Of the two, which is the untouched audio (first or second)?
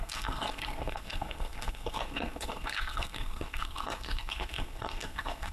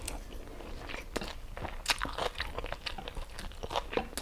second